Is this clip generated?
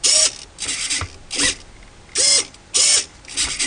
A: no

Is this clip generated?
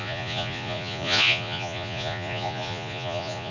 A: yes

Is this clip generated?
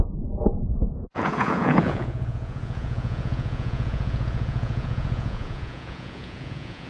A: yes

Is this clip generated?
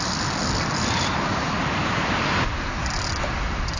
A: no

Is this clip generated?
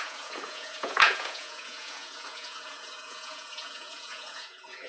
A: yes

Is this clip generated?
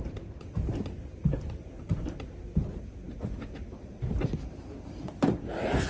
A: no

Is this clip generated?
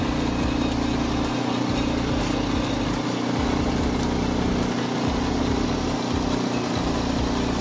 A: no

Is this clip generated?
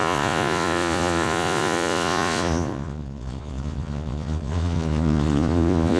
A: yes